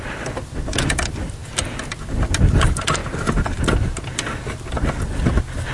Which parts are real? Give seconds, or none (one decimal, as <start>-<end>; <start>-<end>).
0.0-5.7